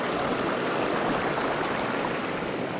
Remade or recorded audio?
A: recorded